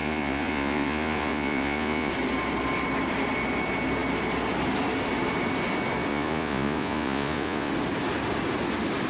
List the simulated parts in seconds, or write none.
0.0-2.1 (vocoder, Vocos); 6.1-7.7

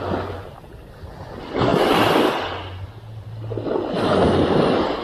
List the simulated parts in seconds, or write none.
none